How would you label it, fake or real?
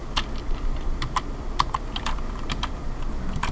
fake